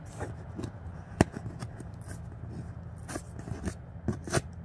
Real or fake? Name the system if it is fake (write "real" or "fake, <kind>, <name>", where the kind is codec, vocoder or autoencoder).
real